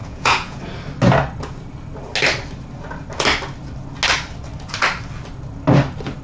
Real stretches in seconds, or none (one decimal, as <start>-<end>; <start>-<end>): 0.6-6.2